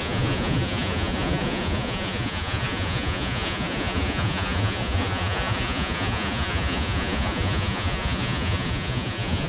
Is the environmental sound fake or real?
fake